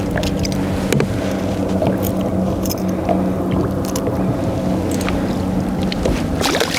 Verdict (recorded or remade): recorded